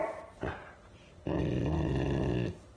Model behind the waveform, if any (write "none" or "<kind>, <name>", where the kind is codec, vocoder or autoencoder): none